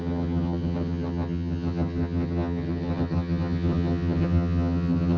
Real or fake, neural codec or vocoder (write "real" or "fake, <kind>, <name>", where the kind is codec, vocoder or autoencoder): fake, vocoder, HiFi-GAN